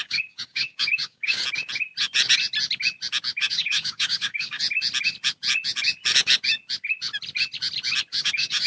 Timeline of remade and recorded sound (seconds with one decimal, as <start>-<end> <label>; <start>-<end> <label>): 0.0-1.4 remade; 1.4-3.5 recorded; 3.5-4.6 remade; 4.6-8.1 recorded; 8.1-8.7 remade